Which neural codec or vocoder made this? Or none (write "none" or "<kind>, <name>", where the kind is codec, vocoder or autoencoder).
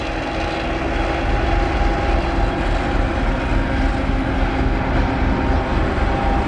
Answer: none